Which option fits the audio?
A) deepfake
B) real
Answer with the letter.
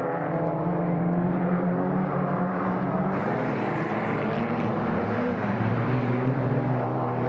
A